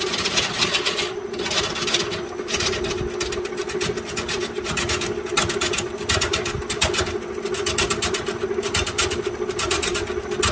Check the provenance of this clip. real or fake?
real